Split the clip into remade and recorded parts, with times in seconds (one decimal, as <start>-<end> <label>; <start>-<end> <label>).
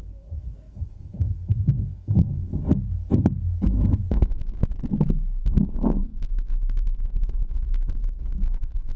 0.0-2.5 remade; 2.5-4.1 recorded; 4.1-4.6 remade; 4.6-5.4 recorded; 5.4-9.0 remade